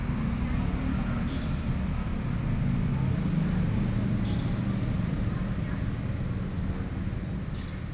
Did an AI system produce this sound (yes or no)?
no